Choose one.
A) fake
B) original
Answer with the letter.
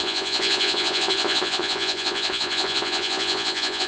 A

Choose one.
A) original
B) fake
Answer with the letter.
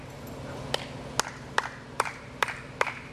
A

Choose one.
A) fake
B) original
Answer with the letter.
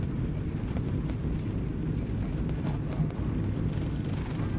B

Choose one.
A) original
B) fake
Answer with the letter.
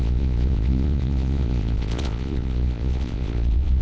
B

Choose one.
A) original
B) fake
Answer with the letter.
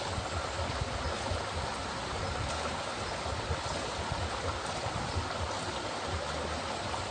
A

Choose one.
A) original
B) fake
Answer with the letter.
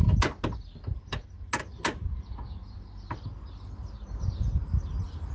A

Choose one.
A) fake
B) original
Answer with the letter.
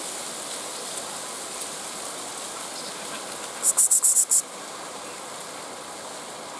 B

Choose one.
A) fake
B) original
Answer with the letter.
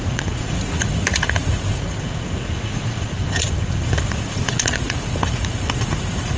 A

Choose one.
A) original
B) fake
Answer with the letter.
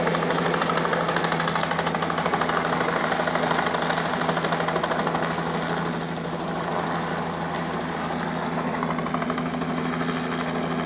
A